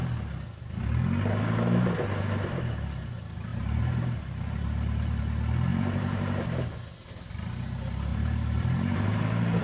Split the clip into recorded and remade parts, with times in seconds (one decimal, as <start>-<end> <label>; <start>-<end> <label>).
0.0-3.5 recorded; 3.5-5.2 remade; 5.2-5.7 recorded; 5.7-6.7 remade; 6.7-8.1 recorded; 8.1-9.6 remade